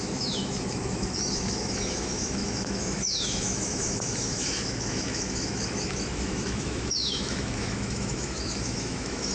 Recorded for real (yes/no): no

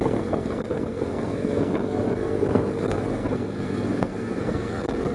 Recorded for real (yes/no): no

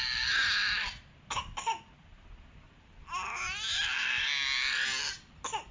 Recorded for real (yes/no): yes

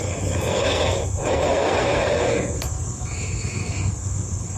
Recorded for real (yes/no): no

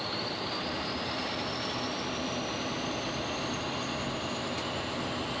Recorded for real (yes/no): yes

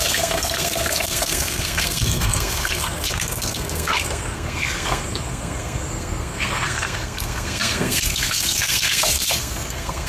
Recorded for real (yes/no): no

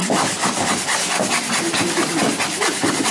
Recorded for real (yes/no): yes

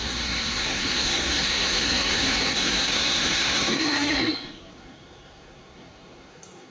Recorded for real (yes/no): no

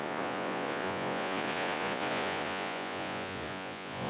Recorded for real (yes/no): no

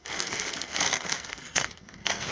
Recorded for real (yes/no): no